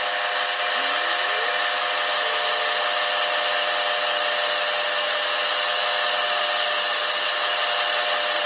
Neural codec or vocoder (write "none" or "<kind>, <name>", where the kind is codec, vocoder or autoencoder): none